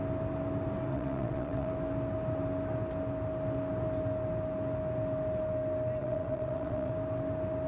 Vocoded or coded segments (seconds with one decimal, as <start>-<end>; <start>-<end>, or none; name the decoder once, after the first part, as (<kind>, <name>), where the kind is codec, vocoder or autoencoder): 0.9-1.7 (vocoder, WaveNeXt); 6.0-6.9